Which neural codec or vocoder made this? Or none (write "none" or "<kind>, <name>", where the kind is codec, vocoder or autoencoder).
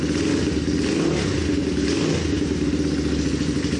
none